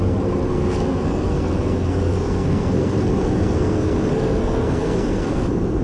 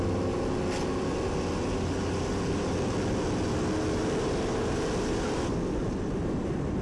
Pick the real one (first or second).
second